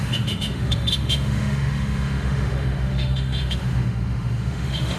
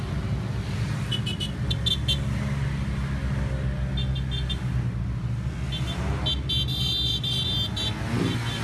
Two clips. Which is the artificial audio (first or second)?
first